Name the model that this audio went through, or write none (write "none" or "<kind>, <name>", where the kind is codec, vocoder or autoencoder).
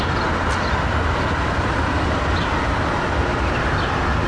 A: none